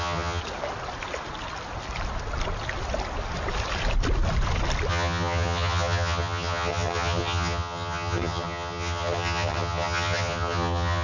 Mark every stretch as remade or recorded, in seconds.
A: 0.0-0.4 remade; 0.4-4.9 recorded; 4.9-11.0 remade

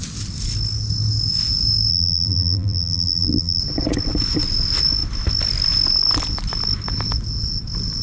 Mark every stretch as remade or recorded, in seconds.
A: 0.0-1.9 recorded; 1.9-3.6 remade; 3.6-8.0 recorded

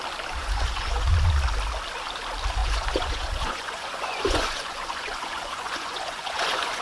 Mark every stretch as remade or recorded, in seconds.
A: 0.0-0.4 recorded; 0.4-1.1 remade; 1.1-2.6 recorded; 2.6-6.8 remade

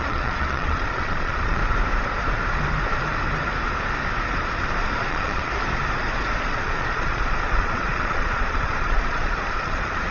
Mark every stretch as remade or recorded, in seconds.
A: 0.0-1.6 remade; 1.6-5.1 recorded; 5.1-5.5 remade; 5.5-6.5 recorded; 6.5-10.1 remade

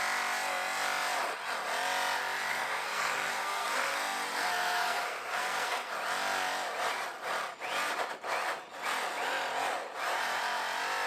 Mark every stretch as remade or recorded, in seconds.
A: 0.0-2.5 recorded; 2.5-5.9 remade; 5.9-11.1 recorded

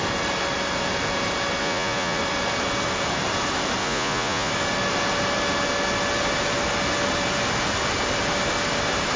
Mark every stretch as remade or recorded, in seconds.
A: 0.0-1.6 recorded; 1.6-2.2 remade; 2.2-3.8 recorded; 3.8-4.5 remade; 4.5-9.2 recorded

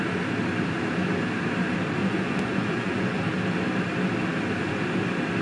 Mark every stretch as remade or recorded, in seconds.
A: 0.0-2.0 recorded; 2.0-3.2 remade; 3.2-5.4 recorded

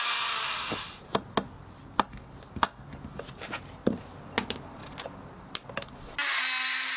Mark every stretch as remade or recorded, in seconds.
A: 0.0-7.0 recorded